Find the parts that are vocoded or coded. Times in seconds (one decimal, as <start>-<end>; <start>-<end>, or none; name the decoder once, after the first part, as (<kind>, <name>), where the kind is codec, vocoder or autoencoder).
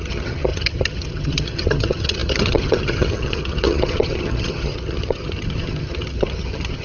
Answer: 0.0-6.8 (vocoder, HiFi-GAN)